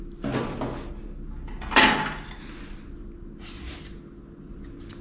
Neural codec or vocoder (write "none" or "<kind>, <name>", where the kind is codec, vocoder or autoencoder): none